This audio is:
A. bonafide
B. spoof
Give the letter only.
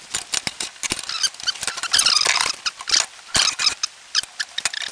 A